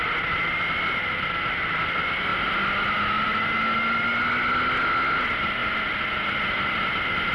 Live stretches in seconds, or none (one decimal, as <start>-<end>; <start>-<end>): 0.0-7.3